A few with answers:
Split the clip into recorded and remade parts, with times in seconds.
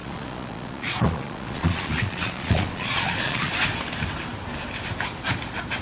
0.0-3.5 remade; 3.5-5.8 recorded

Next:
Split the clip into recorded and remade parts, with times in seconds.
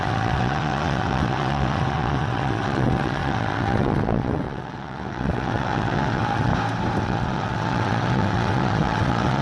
0.0-6.5 remade; 6.5-7.0 recorded; 7.0-9.4 remade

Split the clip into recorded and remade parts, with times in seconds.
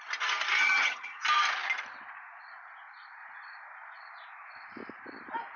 0.0-0.6 recorded; 0.6-1.2 remade; 1.2-5.6 recorded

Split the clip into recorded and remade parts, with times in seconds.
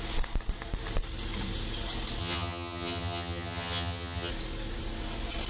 0.0-2.2 recorded; 2.2-4.3 remade; 4.3-5.5 recorded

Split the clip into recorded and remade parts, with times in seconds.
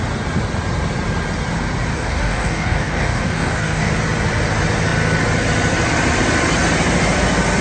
0.0-1.9 recorded; 1.9-3.9 remade; 3.9-7.6 recorded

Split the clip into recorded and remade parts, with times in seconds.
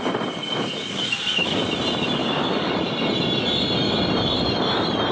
0.0-0.8 recorded; 0.8-1.6 remade; 1.6-2.2 recorded; 2.2-2.7 remade; 2.7-5.1 recorded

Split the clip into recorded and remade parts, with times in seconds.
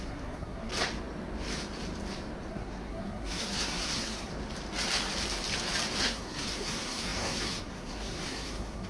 0.0-0.7 remade; 0.7-2.5 recorded; 2.5-4.3 remade; 4.3-6.0 recorded; 6.0-8.9 remade